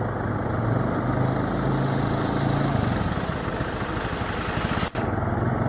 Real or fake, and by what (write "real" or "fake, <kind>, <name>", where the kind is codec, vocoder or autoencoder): real